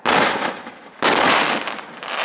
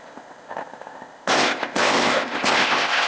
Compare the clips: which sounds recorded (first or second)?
first